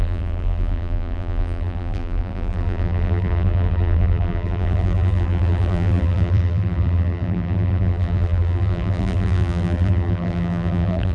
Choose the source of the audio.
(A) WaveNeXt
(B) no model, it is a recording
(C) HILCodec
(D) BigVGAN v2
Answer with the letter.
D